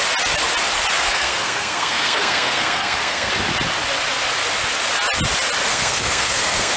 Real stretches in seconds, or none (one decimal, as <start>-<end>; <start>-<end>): 0.0-1.0; 3.3-5.7